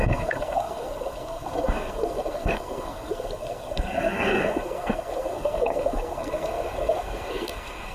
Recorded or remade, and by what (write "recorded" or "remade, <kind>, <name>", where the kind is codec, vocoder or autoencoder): remade, codec, SNAC